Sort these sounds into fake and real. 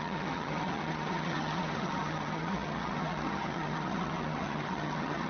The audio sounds fake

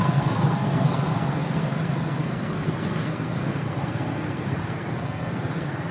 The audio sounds fake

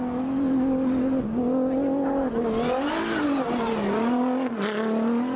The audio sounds real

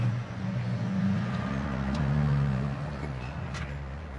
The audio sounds fake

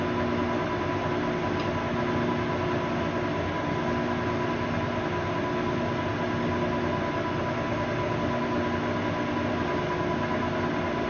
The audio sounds real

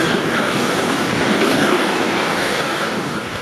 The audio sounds fake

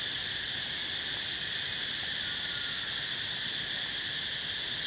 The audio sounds real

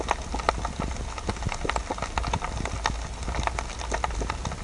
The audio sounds real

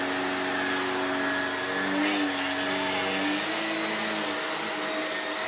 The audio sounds real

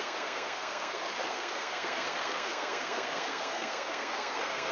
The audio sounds fake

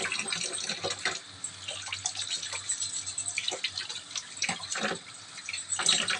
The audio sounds real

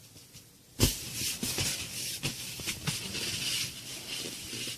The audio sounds real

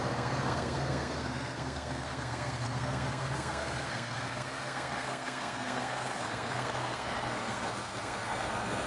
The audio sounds fake